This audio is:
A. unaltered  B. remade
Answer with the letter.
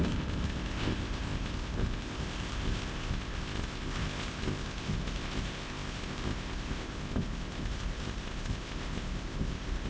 B